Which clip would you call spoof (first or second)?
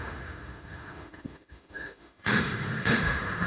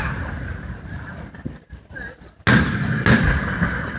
first